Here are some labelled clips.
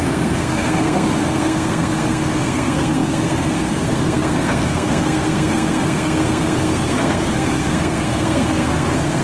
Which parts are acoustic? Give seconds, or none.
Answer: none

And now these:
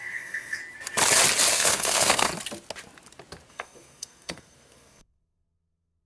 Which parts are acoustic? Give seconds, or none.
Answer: 0.6-1.5; 2.3-3.5

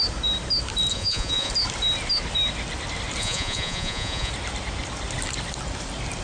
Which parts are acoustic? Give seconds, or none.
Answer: 0.0-0.9; 1.5-3.2; 4.3-6.2

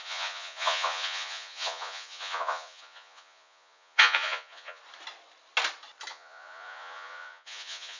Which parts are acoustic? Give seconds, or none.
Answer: 4.8-6.1

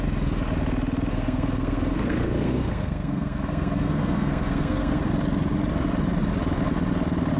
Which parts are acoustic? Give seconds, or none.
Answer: 0.0-1.1; 5.1-7.4

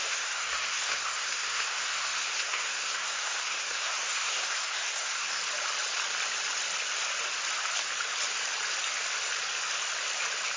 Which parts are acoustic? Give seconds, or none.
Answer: 5.4-10.6